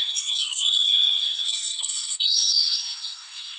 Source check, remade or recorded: remade